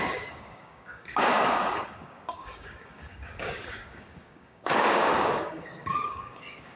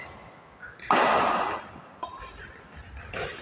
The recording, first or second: second